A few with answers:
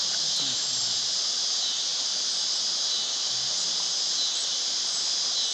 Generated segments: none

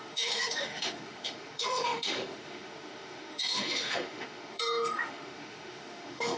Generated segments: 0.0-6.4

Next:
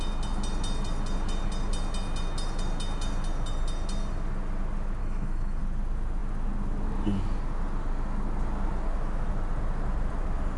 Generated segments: 5.0-5.6

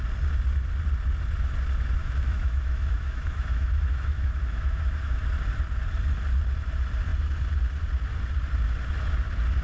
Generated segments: 2.0-5.2

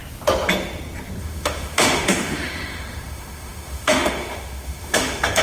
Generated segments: 1.2-5.4

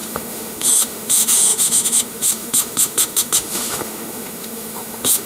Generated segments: 0.0-5.3

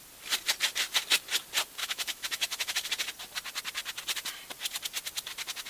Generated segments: 1.8-2.9

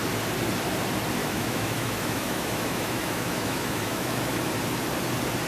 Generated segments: 1.2-4.5